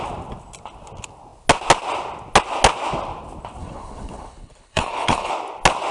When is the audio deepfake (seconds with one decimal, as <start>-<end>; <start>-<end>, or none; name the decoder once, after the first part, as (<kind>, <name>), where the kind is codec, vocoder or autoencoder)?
3.6-5.3 (codec, HILCodec)